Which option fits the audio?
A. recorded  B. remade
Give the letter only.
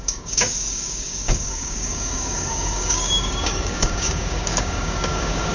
B